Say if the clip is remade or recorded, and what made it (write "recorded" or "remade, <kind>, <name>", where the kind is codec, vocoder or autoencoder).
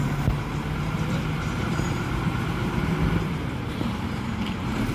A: remade, vocoder, BigVGAN v2